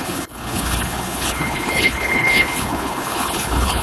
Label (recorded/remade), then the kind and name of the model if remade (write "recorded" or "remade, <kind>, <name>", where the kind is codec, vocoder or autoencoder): remade, codec, HILCodec